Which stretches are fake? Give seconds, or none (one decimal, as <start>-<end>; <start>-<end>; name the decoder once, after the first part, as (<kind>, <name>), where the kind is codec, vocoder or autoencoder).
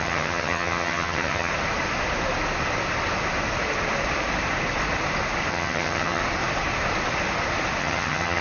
0.0-1.5 (vocoder, HiFi-GAN); 5.5-6.2; 7.8-8.4